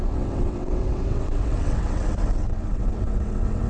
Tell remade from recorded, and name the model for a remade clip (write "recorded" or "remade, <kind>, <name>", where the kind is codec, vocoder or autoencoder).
remade, vocoder, WaveNeXt